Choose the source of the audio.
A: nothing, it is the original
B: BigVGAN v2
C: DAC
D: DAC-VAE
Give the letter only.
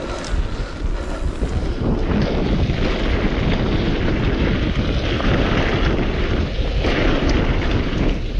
A